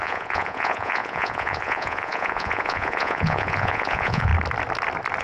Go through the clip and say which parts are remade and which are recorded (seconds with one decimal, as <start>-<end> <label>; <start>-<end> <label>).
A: 0.0-4.3 remade; 4.3-5.2 recorded